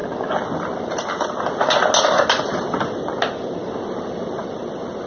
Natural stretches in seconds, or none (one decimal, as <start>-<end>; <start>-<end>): 0.0-5.1